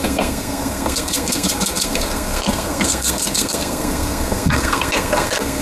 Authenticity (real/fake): fake